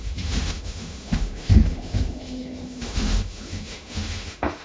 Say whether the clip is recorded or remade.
remade